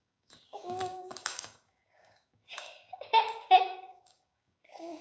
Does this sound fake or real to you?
fake